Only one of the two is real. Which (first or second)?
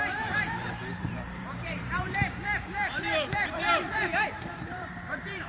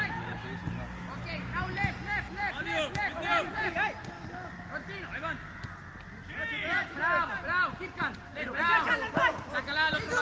second